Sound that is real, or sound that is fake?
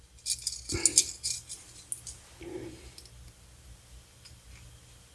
real